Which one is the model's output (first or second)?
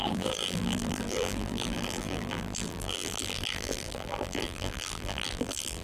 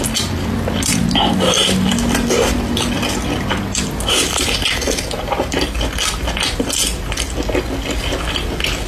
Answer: first